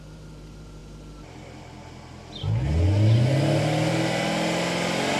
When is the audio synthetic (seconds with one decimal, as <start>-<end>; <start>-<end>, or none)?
none